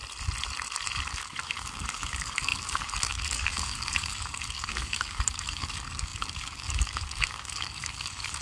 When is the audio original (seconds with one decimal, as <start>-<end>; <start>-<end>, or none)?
0.0-1.0